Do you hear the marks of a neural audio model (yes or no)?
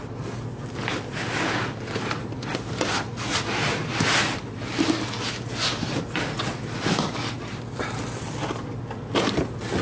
no